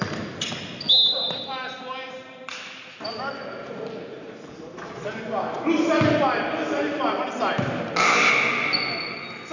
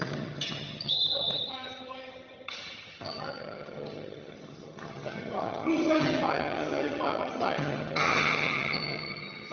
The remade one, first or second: second